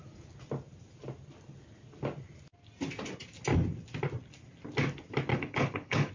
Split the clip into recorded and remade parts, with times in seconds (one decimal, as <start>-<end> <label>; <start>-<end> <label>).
0.0-5.3 recorded; 5.3-6.1 remade